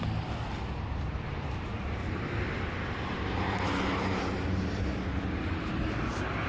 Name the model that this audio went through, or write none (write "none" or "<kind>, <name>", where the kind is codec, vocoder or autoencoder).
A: vocoder, BigVGAN v2